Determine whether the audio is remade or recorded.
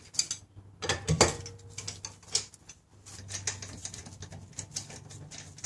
recorded